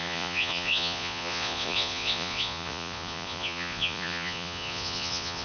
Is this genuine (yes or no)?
no